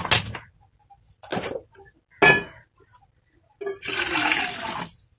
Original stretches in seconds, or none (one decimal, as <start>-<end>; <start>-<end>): 0.0-5.2